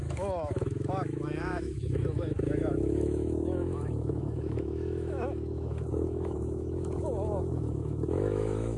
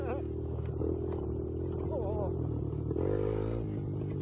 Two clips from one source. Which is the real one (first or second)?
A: second